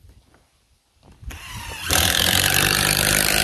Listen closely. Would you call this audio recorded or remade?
remade